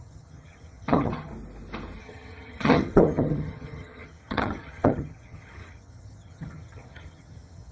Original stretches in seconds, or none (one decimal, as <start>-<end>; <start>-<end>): 1.3-2.0